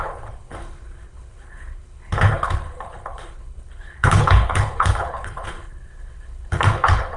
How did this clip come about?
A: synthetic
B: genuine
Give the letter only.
A